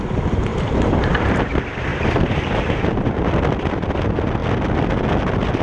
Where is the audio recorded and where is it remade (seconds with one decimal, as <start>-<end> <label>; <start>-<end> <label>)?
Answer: 0.0-0.5 recorded; 0.5-1.4 remade; 1.4-1.9 recorded; 1.9-3.3 remade; 3.3-5.6 recorded